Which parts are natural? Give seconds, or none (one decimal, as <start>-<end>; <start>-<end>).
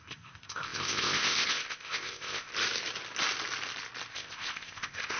2.5-4.1